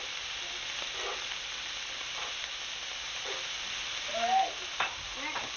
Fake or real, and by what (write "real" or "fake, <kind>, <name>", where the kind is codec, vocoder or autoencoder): real